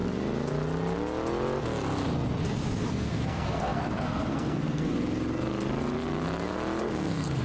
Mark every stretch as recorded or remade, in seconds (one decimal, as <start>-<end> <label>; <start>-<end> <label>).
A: 0.0-2.9 recorded; 2.9-4.9 remade; 4.9-6.8 recorded; 6.8-7.4 remade